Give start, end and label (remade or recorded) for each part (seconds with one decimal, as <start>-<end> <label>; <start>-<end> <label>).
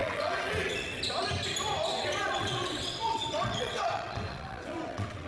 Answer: 0.0-1.0 remade; 1.0-1.9 recorded; 1.9-5.3 remade